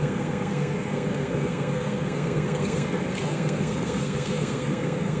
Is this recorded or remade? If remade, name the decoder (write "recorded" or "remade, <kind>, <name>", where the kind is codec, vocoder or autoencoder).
remade, codec, SNAC